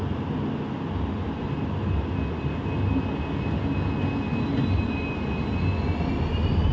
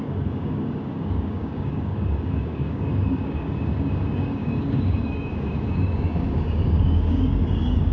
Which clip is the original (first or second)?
first